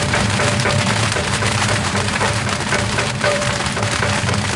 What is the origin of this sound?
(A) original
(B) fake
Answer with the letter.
B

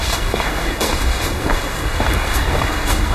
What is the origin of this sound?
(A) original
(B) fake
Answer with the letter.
B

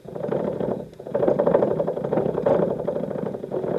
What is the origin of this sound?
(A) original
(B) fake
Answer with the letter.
B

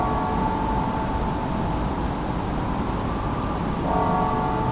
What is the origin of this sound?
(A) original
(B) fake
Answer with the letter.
A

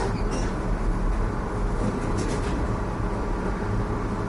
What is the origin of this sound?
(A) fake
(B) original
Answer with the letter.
B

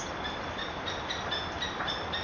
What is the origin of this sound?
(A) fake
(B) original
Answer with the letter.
B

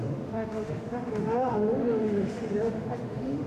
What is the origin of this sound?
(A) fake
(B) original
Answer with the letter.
A